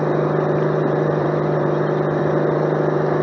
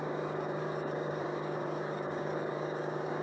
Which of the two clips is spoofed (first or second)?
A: second